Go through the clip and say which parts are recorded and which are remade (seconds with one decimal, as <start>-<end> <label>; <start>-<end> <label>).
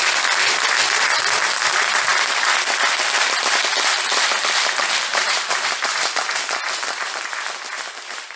0.0-5.1 recorded; 5.1-6.0 remade; 6.0-8.4 recorded